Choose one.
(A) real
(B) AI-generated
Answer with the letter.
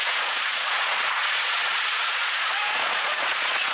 B